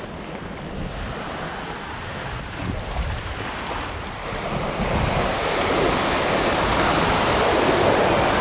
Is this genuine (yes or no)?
yes